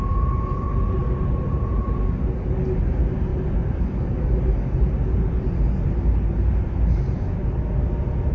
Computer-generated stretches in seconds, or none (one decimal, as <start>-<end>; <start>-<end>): none